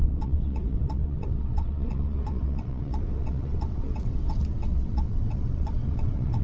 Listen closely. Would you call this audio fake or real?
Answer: fake